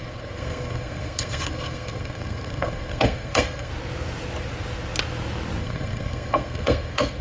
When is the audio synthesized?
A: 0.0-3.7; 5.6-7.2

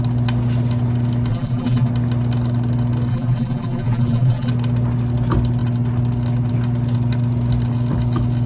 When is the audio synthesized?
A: 1.3-1.9; 3.1-4.5

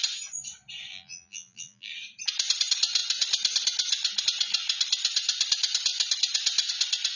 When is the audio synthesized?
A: 0.9-1.9

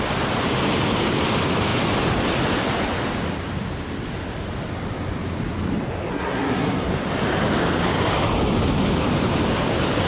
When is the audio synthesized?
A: 6.1-6.9

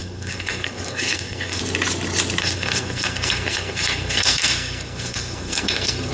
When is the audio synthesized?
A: 0.0-1.6; 2.4-6.1

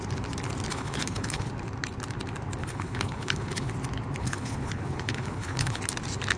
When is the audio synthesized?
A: 0.7-1.5; 2.6-3.7; 4.2-5.8

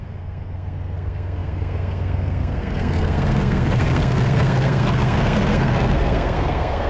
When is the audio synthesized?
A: 0.0-6.9

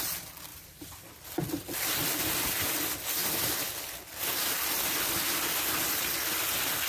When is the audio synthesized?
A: 0.5-2.5